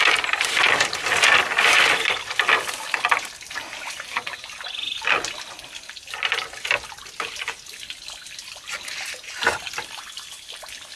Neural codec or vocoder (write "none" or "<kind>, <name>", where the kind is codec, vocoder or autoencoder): none